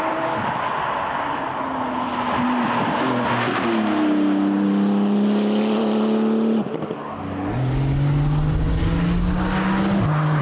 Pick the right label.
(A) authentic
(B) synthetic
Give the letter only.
A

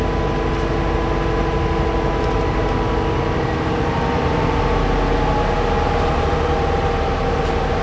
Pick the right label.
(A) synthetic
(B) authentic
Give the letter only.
B